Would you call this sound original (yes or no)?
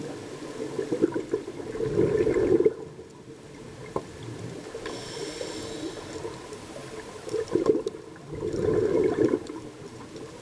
yes